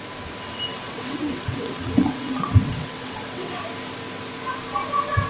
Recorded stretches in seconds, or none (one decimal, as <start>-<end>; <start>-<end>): 0.0-0.7; 3.6-5.3